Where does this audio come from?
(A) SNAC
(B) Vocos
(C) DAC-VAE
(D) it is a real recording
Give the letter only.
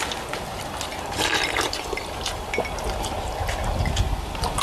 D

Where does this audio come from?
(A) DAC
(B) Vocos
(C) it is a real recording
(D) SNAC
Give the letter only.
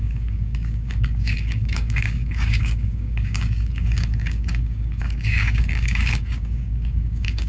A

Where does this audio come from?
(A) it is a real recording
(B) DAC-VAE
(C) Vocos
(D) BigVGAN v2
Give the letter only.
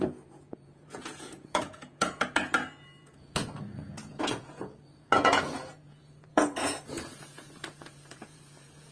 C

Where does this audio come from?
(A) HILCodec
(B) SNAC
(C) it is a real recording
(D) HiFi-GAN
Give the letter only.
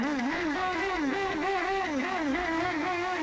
B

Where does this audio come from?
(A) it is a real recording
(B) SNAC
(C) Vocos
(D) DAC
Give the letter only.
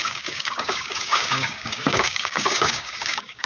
D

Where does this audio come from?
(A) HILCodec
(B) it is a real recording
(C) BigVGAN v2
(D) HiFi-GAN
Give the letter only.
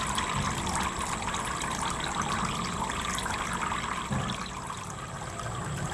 B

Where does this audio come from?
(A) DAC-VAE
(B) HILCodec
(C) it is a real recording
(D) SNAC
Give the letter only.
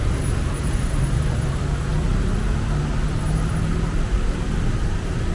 C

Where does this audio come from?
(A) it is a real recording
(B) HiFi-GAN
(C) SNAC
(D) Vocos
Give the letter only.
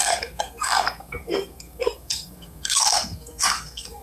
C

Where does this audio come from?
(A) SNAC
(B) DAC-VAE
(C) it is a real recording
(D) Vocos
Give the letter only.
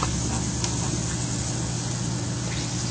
C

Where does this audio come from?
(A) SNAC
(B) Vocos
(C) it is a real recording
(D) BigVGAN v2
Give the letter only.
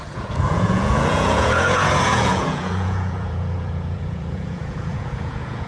B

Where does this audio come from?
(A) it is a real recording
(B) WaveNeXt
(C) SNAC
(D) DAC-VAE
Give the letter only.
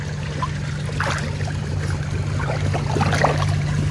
A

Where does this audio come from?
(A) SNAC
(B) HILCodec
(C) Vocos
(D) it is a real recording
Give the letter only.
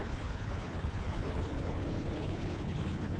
B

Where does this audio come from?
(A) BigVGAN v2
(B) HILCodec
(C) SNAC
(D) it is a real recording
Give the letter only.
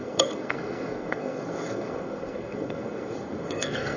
C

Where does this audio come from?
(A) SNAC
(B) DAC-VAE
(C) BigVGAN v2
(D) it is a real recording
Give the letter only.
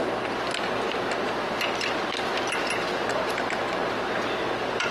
D